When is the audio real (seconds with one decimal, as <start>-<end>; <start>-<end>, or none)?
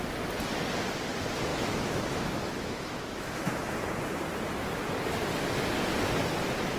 0.0-1.5; 4.0-6.8